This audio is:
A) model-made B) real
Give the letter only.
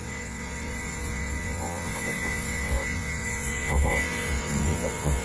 A